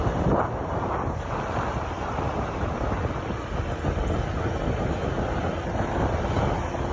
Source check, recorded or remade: recorded